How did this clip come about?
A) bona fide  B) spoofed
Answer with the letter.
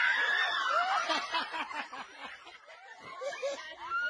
A